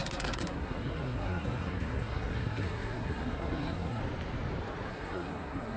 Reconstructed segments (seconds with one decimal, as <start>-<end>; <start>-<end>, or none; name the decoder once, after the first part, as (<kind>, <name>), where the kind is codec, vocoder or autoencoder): 0.0-4.0 (codec, SNAC); 4.9-5.8

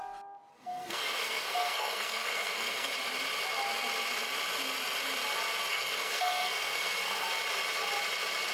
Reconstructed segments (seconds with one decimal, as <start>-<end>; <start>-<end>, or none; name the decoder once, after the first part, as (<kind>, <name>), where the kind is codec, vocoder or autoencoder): 0.5-2.9 (codec, SNAC); 5.7-7.3

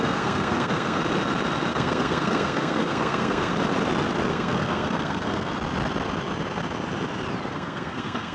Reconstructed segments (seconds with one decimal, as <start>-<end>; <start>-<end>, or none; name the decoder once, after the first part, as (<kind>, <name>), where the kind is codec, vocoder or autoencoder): 0.0-1.0 (codec, SNAC); 1.7-3.5; 4.3-5.5; 7.5-8.3

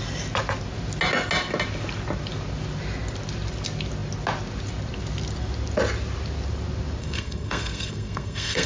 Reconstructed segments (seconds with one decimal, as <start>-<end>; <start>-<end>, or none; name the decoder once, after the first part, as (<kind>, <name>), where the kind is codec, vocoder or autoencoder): 7.0-8.7 (codec, SNAC)

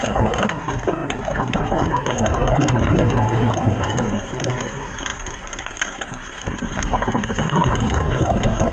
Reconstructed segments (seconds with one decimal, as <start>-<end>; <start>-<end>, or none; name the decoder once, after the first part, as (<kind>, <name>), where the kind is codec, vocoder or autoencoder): 0.0-8.7 (codec, SNAC)

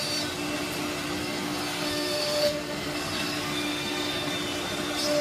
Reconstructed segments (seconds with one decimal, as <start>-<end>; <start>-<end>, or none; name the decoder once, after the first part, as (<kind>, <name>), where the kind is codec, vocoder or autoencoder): 1.2-4.3 (codec, SNAC)

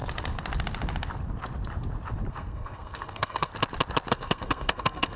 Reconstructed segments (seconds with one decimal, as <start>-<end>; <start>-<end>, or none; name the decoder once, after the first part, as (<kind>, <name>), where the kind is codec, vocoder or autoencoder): 2.3-3.5 (codec, SNAC); 4.1-5.2

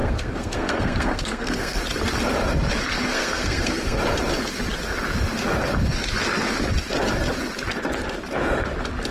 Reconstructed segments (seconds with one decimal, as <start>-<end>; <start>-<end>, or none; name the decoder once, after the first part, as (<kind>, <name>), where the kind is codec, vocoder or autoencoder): 0.0-1.8 (codec, SNAC); 3.1-4.0